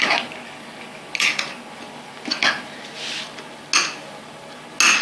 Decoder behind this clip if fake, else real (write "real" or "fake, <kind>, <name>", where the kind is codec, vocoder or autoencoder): real